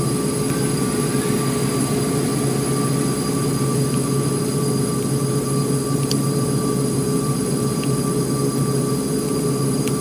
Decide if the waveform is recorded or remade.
recorded